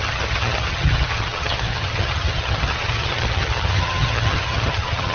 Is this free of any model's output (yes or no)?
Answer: no